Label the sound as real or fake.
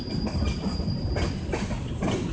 real